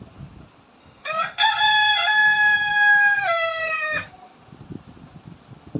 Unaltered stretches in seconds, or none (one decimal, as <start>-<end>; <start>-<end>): 0.0-0.8; 4.1-5.8